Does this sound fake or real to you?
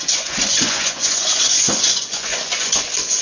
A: fake